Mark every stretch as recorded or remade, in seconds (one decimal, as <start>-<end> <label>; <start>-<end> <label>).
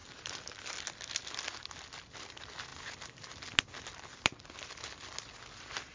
0.0-0.8 recorded; 0.8-2.7 remade; 2.7-3.9 recorded; 3.9-5.9 remade